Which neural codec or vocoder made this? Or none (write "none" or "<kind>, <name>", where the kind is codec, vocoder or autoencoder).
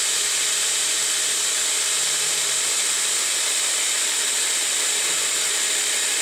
none